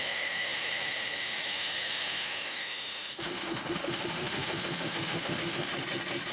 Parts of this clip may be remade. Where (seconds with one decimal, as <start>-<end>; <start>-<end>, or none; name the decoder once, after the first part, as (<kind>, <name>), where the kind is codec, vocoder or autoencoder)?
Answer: 0.0-5.7 (autoencoder, DAC-VAE)

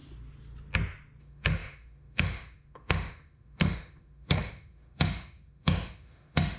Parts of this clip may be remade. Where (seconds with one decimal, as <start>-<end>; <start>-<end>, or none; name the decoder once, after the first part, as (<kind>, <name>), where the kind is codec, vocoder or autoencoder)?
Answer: 1.2-6.6 (autoencoder, DAC-VAE)

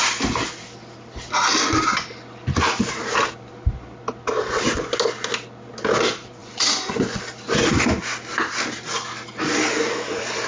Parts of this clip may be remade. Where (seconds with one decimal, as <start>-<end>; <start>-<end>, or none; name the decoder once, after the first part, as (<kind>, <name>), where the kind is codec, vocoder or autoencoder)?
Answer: 6.4-7.2 (vocoder, Vocos)

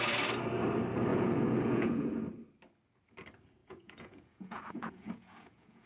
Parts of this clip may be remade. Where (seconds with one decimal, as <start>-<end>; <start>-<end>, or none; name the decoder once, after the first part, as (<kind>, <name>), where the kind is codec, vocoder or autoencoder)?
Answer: 1.1-2.2 (vocoder, Vocos); 3.6-5.9

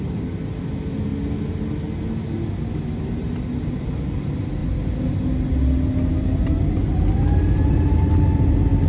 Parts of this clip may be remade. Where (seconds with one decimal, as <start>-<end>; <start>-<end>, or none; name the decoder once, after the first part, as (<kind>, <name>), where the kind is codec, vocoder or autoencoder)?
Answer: none

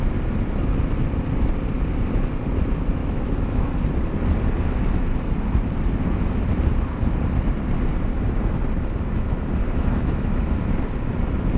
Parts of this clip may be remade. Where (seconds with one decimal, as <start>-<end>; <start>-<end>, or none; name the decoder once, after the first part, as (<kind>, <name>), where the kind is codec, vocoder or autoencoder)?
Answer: 3.0-3.7 (autoencoder, DAC-VAE); 9.6-10.5

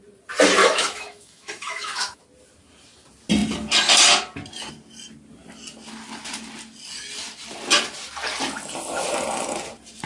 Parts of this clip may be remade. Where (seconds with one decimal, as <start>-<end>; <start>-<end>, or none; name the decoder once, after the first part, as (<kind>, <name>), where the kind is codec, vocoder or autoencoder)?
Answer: 0.6-2.2 (autoencoder, DAC-VAE)

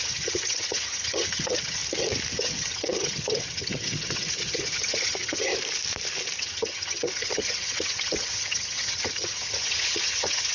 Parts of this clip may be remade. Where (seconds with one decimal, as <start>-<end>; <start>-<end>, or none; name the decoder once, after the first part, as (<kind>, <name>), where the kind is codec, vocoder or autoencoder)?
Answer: 0.0-1.8 (vocoder, HiFi-GAN); 2.3-5.5; 6.4-10.5